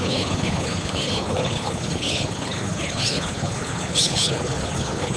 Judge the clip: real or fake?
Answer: fake